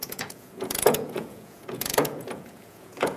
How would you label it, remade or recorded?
remade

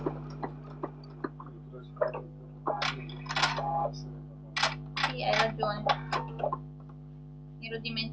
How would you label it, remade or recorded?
recorded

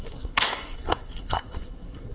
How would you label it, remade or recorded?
remade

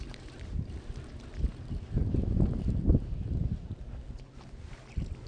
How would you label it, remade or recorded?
recorded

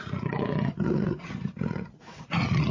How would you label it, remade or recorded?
remade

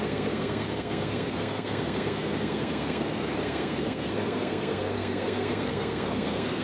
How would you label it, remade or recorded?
remade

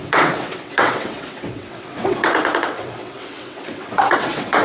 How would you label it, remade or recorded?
remade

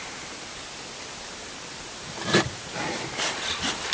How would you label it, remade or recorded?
remade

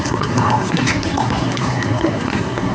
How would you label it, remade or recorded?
remade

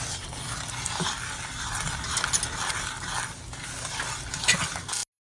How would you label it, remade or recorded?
recorded